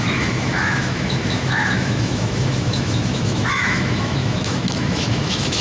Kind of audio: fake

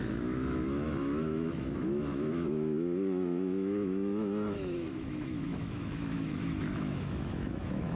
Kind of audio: fake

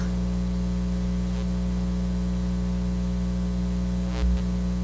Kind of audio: real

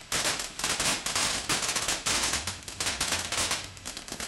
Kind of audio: fake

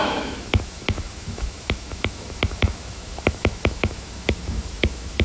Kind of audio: fake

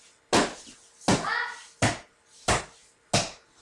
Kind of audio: real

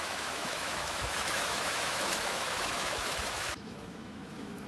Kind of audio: fake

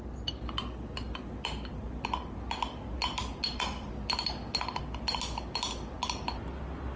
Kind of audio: real